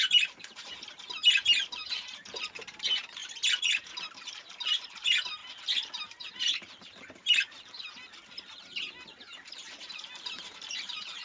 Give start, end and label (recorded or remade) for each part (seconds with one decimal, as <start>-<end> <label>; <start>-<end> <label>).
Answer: 0.0-11.2 remade